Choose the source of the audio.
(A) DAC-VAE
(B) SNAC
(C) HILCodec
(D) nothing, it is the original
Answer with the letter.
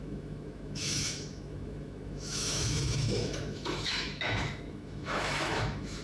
A